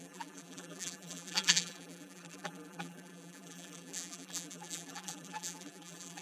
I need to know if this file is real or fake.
fake